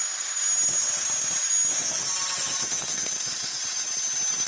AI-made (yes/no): no